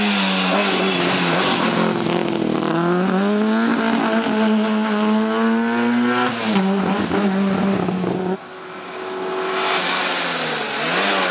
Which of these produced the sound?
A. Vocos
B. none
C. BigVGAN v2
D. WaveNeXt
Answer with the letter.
B